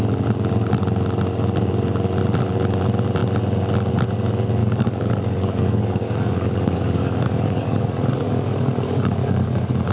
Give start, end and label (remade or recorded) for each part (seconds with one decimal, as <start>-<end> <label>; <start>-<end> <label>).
0.0-4.6 recorded; 4.6-9.9 remade